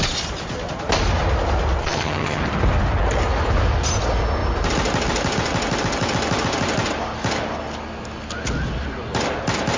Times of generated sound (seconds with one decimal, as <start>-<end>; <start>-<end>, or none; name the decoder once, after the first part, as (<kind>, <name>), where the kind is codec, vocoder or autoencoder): 1.8-2.4 (vocoder, HiFi-GAN)